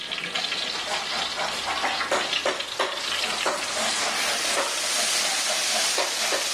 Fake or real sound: real